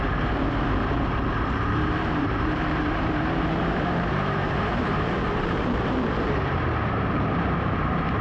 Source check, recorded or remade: remade